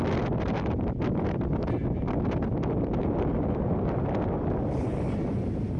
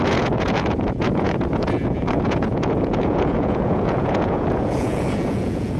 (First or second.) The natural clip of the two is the first